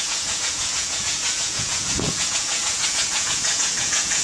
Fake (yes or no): yes